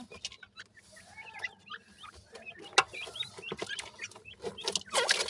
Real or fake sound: real